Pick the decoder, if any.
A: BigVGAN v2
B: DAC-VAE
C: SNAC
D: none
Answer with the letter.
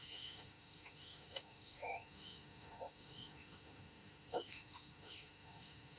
B